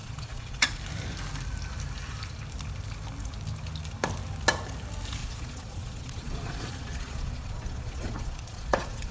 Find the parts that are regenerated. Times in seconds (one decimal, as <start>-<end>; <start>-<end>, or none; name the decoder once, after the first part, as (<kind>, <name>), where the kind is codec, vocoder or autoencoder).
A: 0.0-0.8 (vocoder, Vocos); 5.2-9.1